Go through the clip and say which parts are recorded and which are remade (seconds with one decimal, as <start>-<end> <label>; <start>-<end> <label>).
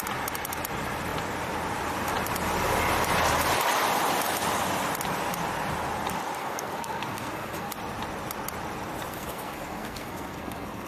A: 0.0-6.4 recorded; 6.4-7.7 remade; 7.7-9.1 recorded; 9.1-10.9 remade